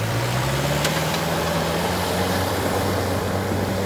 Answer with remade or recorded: remade